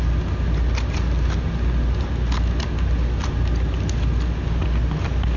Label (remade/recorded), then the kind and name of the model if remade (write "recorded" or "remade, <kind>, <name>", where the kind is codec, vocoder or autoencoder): recorded